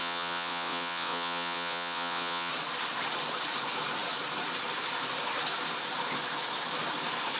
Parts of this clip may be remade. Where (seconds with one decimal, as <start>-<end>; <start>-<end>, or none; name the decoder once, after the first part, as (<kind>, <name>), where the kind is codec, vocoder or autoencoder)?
0.0-2.5 (vocoder, WaveNeXt)